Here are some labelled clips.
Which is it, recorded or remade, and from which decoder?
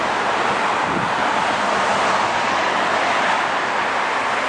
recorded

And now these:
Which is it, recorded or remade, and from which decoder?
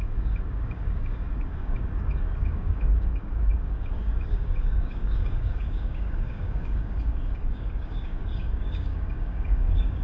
remade, codec, DAC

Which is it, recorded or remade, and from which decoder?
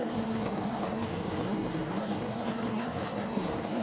remade, codec, SNAC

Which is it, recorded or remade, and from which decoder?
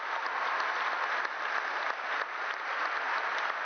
recorded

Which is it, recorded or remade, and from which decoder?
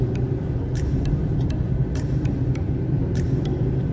recorded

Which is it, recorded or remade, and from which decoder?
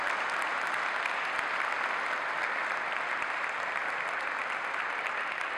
remade, vocoder, BigVGAN v2